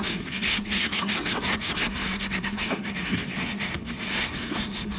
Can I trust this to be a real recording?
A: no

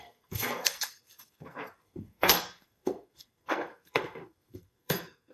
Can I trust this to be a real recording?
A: no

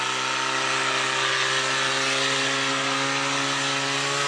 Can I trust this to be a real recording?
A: yes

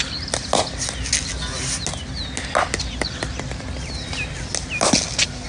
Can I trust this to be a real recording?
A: yes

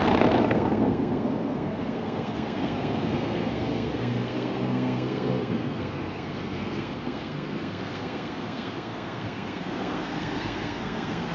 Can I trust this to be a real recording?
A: no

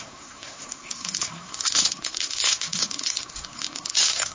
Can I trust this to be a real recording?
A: no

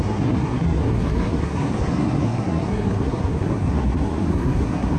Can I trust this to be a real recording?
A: no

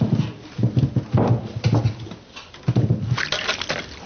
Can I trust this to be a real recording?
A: yes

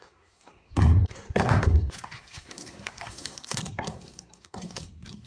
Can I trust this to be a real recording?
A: no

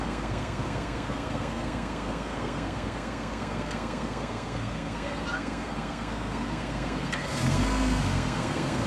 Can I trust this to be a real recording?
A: no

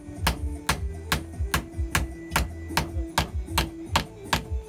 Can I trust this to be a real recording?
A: yes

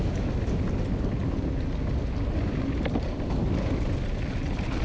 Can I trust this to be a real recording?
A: yes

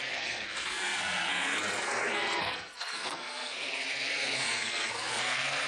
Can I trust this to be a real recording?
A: no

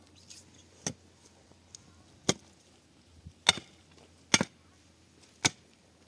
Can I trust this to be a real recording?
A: yes